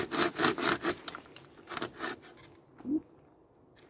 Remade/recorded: recorded